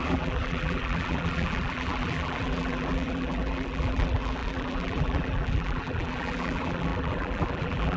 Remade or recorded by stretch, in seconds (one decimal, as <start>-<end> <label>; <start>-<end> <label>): 0.0-8.0 remade